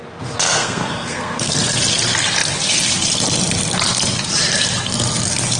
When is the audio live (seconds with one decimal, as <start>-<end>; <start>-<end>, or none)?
0.0-0.6; 1.5-5.6